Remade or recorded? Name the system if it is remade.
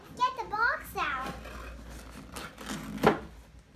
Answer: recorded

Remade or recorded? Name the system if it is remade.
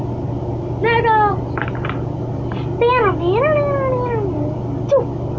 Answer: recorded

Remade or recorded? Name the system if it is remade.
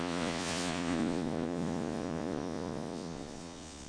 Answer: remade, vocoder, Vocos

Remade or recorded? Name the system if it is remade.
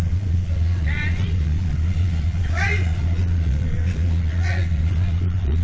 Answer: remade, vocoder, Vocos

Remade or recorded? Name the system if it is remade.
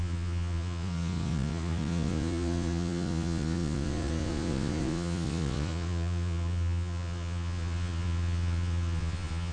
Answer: remade, vocoder, Vocos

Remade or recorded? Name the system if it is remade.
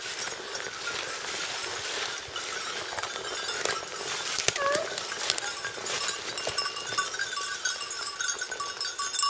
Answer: recorded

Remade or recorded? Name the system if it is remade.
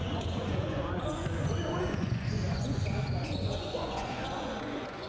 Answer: remade, vocoder, Vocos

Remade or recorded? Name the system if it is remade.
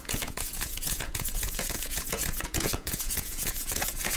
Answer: remade, vocoder, Vocos